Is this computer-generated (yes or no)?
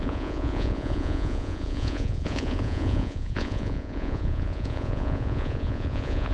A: yes